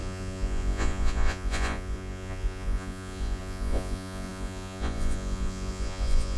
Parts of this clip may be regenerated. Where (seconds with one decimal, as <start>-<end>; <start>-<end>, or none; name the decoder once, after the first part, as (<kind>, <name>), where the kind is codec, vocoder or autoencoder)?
0.0-6.4 (vocoder, Vocos)